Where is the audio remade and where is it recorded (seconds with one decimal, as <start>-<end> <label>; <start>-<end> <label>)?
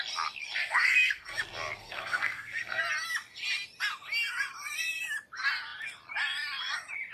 0.0-0.6 recorded; 0.6-1.4 remade; 1.4-1.8 recorded; 1.8-2.8 remade; 2.8-7.1 recorded